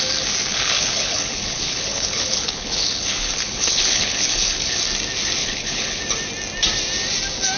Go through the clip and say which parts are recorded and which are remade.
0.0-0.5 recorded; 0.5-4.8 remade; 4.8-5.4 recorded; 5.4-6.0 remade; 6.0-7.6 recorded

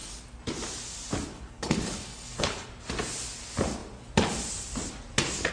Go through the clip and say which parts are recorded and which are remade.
0.0-1.3 recorded; 1.3-2.7 remade; 2.7-5.5 recorded